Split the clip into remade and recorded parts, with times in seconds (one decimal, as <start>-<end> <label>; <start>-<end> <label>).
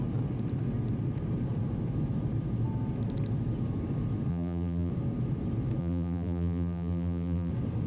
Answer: 0.0-4.3 recorded; 4.3-4.9 remade; 4.9-5.8 recorded; 5.8-7.5 remade; 7.5-7.9 recorded